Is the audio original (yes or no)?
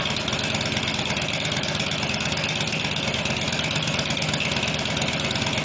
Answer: yes